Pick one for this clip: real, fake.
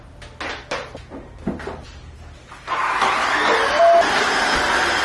real